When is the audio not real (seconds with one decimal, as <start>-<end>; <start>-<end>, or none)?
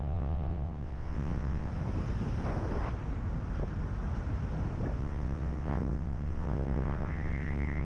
0.0-1.7; 5.0-7.8